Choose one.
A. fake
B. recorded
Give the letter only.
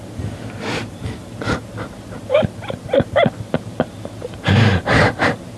A